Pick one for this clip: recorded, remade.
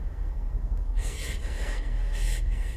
remade